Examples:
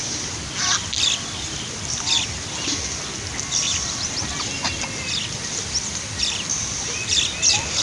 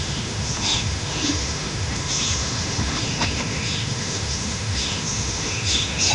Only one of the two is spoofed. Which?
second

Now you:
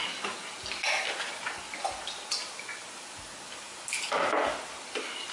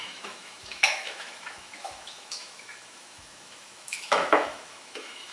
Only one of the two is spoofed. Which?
second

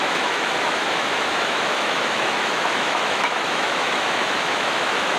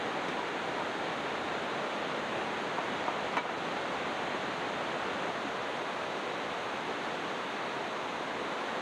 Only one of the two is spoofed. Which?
first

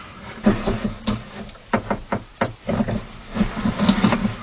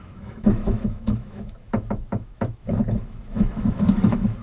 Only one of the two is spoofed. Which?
second